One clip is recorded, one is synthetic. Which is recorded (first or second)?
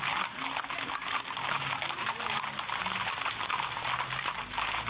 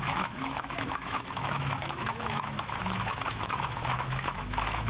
first